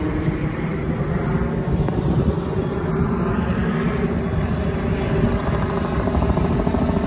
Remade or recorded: recorded